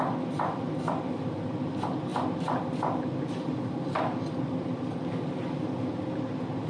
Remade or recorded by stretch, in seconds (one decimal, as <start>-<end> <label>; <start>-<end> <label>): 0.0-6.7 recorded